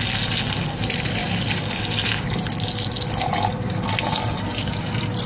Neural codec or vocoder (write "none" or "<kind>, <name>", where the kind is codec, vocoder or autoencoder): none